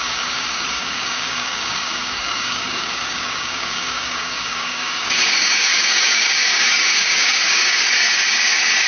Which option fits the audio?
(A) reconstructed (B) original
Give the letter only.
A